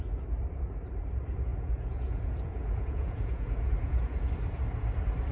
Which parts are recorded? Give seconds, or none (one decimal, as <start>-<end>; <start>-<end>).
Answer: 0.0-1.5; 4.3-5.3